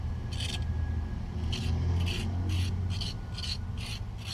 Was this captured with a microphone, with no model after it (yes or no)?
yes